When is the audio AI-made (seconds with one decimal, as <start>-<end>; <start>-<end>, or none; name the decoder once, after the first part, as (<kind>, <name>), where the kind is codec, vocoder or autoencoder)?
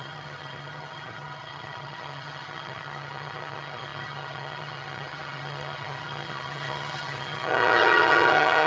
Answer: 0.0-8.7 (vocoder, HiFi-GAN)